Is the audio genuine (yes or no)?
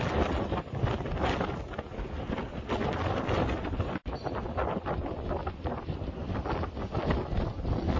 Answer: yes